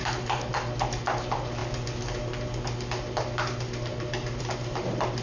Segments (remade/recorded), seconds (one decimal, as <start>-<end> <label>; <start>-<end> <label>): 0.0-5.2 recorded